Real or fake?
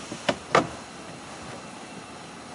real